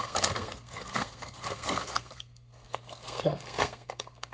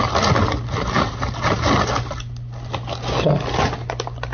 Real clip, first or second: second